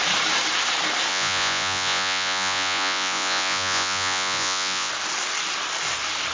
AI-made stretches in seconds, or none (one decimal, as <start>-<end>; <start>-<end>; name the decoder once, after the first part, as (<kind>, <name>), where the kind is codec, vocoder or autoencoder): 1.1-4.9 (vocoder, Vocos)